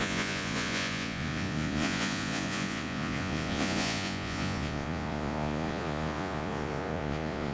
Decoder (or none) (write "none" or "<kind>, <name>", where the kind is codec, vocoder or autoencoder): vocoder, Vocos